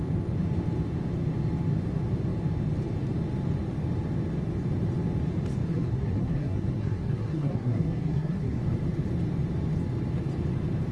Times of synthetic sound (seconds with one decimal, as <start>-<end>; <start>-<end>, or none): 5.7-8.6